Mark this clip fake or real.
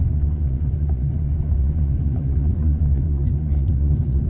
fake